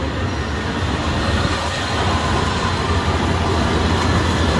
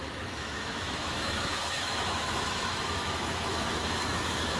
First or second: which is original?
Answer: first